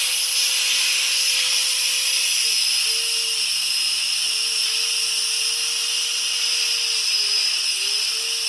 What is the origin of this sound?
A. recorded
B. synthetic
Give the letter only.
A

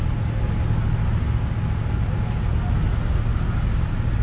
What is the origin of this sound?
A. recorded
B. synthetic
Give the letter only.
A